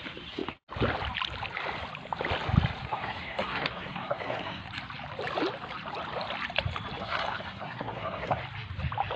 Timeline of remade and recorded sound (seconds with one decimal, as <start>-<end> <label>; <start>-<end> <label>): 0.0-2.8 recorded; 2.8-4.7 remade; 4.7-7.0 recorded; 7.0-8.4 remade; 8.4-9.2 recorded